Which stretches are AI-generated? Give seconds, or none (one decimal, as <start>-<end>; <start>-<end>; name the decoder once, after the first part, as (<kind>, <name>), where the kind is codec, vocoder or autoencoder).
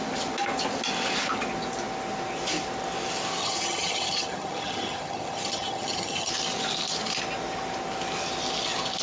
3.4-6.3 (vocoder, HiFi-GAN)